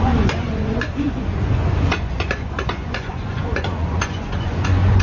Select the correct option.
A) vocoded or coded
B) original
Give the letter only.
A